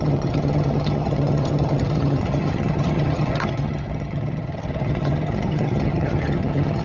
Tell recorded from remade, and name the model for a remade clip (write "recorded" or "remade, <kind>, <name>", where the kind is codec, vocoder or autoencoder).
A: remade, vocoder, HiFi-GAN